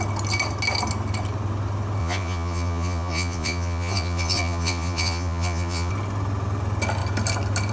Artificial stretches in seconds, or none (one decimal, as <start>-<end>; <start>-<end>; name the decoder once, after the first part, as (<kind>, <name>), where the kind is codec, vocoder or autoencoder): 2.0-5.9 (vocoder, Vocos)